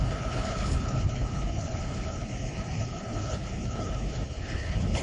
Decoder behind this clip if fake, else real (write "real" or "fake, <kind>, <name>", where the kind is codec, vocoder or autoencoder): fake, codec, HILCodec